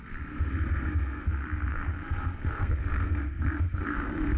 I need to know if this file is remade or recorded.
remade